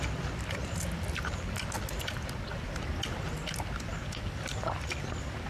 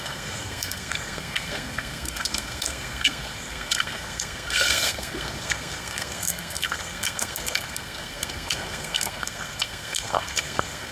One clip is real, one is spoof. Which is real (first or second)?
first